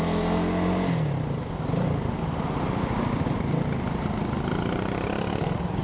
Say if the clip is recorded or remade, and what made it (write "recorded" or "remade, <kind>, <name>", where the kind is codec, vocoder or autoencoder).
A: recorded